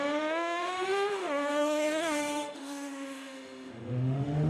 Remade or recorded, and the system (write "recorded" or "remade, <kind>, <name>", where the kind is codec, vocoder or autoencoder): remade, autoencoder, DAC-VAE